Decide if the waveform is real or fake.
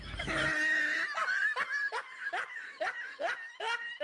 real